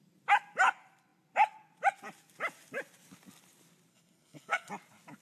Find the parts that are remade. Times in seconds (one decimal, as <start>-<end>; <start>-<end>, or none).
3.9-4.7